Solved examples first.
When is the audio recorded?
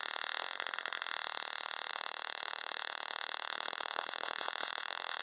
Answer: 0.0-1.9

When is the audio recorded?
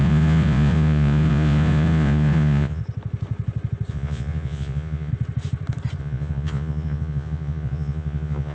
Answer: 2.8-3.9; 5.1-6.0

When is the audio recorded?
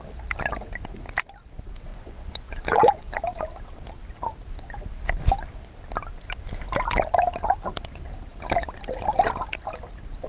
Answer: 0.0-1.9; 3.2-10.3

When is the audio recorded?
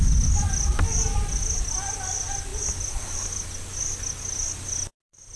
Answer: 0.0-5.4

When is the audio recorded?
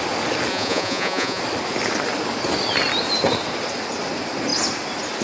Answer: 0.0-0.5; 1.4-5.2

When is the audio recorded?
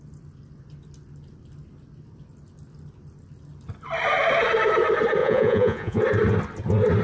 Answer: 0.0-5.2; 6.0-7.0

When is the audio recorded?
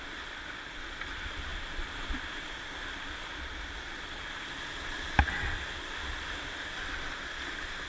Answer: 0.0-7.9